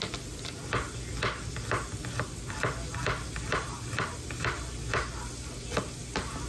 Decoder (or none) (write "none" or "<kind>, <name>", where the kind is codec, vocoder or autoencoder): none